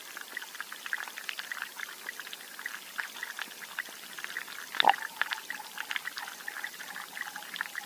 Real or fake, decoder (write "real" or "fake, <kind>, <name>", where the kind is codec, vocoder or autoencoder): real